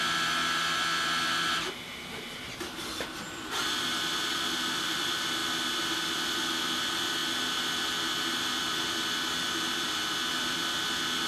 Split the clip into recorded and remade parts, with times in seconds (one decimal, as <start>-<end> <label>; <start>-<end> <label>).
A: 0.0-11.3 recorded